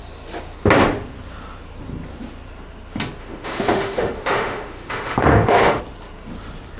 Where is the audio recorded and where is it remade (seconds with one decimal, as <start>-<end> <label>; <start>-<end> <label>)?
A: 0.0-3.2 recorded; 3.2-5.8 remade; 5.8-6.8 recorded